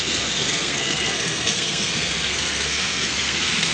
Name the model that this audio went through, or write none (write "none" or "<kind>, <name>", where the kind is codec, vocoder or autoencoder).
codec, SNAC